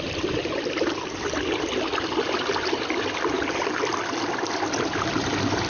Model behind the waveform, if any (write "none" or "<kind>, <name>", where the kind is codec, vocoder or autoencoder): none